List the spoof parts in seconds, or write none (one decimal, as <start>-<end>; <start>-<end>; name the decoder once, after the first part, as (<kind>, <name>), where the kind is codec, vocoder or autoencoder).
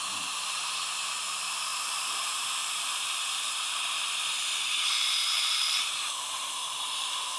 1.2-7.4 (vocoder, BigVGAN v2)